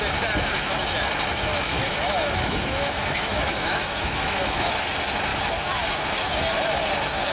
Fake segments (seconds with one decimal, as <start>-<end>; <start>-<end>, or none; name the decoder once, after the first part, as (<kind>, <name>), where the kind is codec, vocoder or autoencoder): 1.5-4.7 (autoencoder, DAC-VAE)